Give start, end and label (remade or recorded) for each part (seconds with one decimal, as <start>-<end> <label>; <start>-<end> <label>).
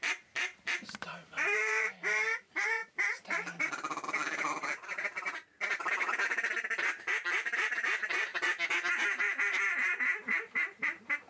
0.0-5.4 remade; 5.4-6.5 recorded; 6.5-8.3 remade; 8.3-9.5 recorded; 9.5-11.3 remade